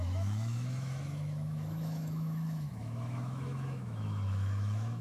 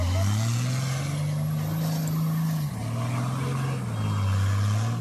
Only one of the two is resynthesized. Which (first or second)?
first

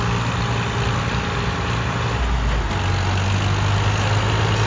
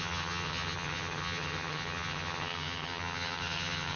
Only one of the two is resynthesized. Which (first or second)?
second